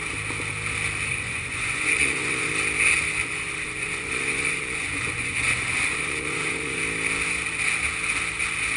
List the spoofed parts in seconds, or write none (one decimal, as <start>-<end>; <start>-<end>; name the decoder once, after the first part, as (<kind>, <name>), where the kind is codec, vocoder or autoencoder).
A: 1.1-2.5 (vocoder, Vocos); 3.2-6.8